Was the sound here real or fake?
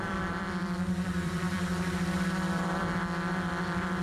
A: fake